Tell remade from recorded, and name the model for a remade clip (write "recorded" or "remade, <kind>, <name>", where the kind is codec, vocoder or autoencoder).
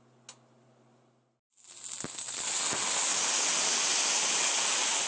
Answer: recorded